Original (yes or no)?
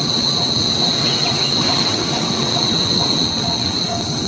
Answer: no